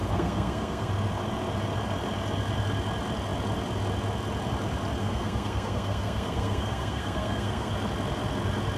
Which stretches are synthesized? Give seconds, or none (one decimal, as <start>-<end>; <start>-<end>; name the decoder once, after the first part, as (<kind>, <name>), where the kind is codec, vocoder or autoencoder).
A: 0.0-0.9 (codec, SNAC); 5.0-7.7